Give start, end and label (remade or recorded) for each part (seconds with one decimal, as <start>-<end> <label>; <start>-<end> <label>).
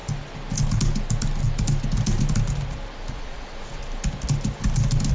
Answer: 0.0-3.1 recorded; 3.1-3.8 remade; 3.8-5.1 recorded